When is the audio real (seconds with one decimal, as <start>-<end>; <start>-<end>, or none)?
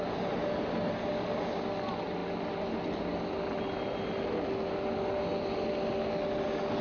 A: 0.0-6.8